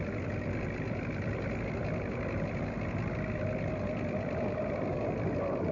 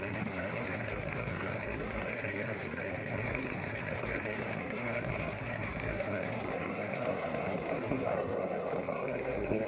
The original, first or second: first